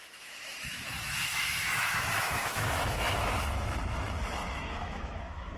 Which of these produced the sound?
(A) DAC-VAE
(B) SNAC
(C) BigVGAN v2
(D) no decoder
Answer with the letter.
A